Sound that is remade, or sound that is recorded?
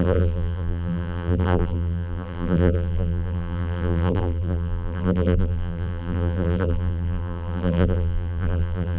remade